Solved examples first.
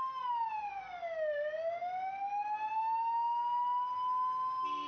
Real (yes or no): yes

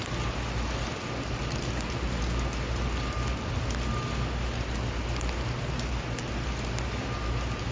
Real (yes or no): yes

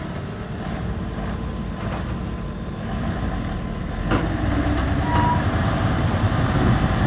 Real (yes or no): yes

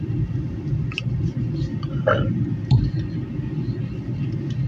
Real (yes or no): yes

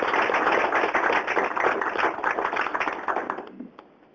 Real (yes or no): yes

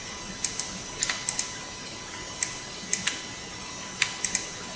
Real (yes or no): yes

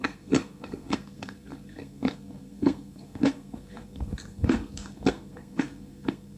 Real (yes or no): no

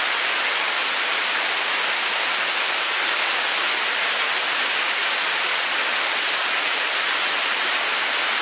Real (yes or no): yes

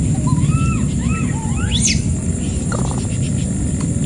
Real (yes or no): yes